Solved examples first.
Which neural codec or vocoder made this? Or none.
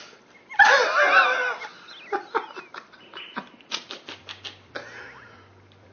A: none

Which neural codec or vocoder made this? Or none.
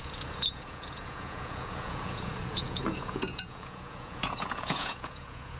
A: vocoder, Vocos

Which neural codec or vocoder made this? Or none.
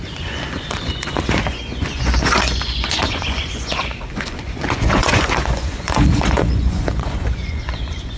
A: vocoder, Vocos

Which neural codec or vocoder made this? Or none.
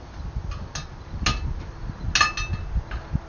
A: none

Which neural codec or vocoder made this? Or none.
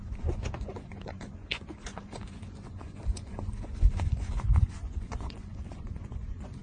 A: vocoder, Vocos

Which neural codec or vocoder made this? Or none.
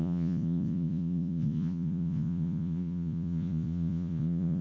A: vocoder, Vocos